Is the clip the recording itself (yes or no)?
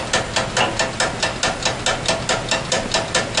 yes